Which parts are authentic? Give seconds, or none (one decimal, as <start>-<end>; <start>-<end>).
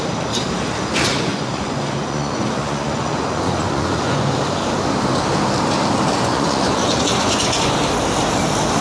0.0-1.3; 4.4-6.1; 7.8-8.8